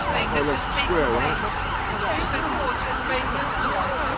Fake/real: real